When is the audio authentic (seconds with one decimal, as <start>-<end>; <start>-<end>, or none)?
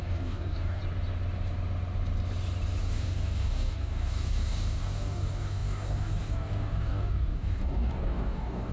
0.8-2.8